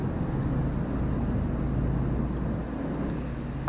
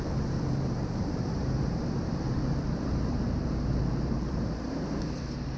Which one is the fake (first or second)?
second